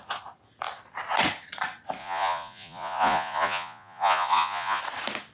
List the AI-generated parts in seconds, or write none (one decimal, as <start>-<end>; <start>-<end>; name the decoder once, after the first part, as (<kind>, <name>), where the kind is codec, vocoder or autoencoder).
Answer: 2.0-4.8 (vocoder, Vocos)